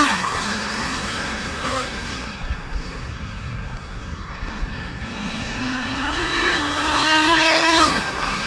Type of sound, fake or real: fake